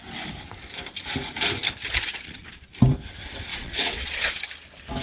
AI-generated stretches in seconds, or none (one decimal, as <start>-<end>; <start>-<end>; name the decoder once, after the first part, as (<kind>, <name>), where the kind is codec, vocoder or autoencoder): 2.1-2.7 (vocoder, Vocos); 3.5-4.4